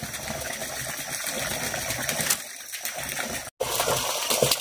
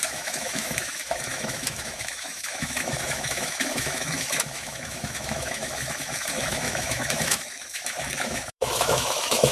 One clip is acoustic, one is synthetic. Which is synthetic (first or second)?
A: second